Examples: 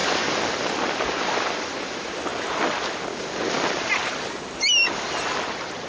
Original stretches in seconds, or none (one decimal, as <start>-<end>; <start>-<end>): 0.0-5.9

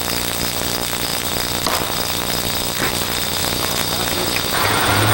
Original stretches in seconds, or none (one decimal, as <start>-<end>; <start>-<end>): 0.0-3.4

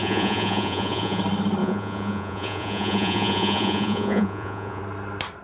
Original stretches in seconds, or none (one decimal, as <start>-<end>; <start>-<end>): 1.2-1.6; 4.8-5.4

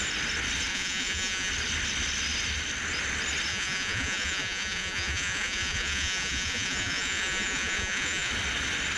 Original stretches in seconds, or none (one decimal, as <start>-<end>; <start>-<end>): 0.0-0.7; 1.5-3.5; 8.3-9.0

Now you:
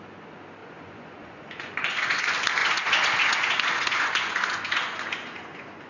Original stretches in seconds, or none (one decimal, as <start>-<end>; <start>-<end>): 0.0-0.6; 2.2-2.6